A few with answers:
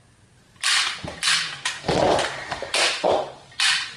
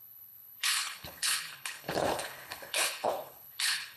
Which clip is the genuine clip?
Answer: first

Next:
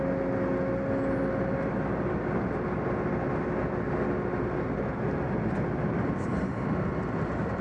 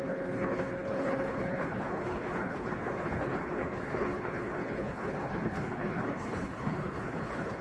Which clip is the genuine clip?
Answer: first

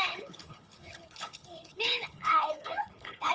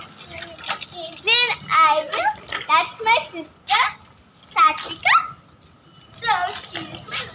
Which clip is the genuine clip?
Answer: second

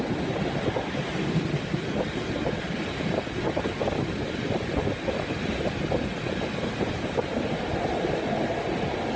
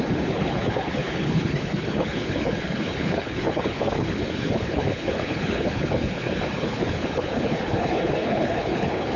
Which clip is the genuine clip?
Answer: first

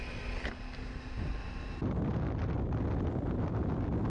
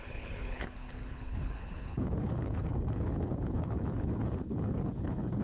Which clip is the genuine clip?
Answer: first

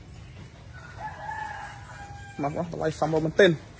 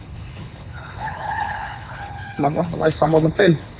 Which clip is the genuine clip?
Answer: first